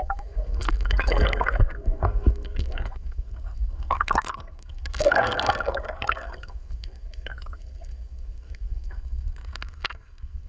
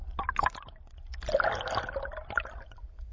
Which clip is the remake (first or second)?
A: first